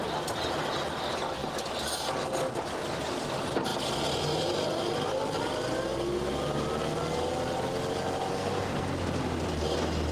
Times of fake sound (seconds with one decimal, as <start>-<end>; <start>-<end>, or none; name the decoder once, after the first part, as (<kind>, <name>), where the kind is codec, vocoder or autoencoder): 8.3-8.9 (codec, SNAC)